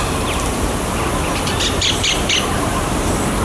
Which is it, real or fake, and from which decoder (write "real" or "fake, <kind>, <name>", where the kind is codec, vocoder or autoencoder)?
real